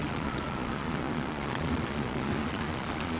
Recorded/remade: remade